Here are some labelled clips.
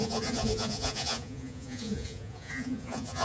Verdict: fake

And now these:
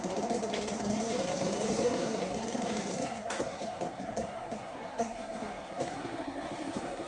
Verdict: fake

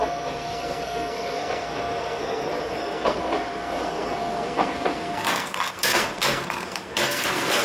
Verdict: fake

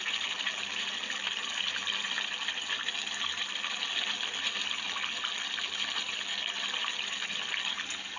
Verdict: real